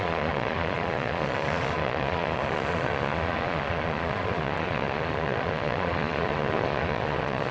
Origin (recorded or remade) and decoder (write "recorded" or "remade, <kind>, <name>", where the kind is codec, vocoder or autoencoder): remade, vocoder, Vocos